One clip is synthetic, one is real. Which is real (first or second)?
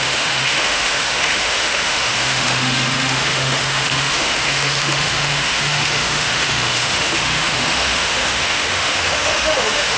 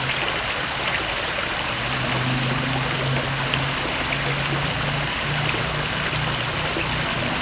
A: second